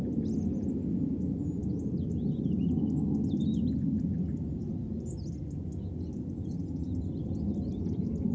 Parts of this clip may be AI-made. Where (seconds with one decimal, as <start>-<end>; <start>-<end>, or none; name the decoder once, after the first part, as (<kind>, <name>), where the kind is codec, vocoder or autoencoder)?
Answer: none